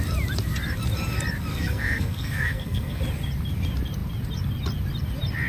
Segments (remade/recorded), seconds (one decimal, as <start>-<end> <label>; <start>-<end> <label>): 0.0-1.5 recorded; 1.5-3.0 remade; 3.0-5.5 recorded